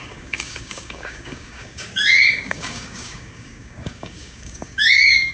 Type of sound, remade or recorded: remade